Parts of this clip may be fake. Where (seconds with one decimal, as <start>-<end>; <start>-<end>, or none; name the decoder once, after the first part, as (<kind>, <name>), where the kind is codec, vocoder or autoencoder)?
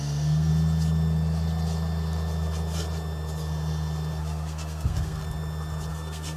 0.0-0.5 (codec, SNAC); 4.2-5.2; 5.9-6.4